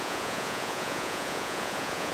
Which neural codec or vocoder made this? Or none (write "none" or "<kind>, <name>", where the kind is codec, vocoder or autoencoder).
vocoder, Vocos